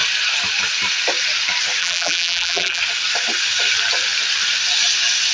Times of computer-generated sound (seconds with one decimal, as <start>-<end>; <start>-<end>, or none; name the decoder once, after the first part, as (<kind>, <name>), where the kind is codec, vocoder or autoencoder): 1.8-2.8 (vocoder, BigVGAN v2)